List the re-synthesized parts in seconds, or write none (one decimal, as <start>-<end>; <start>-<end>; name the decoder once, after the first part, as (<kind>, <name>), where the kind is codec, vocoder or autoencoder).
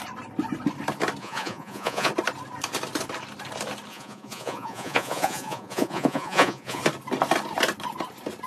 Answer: 1.2-2.1 (vocoder, Vocos); 3.9-6.8